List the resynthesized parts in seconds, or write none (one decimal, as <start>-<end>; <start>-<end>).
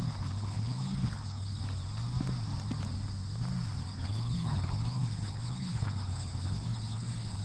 0.0-1.6; 3.9-7.4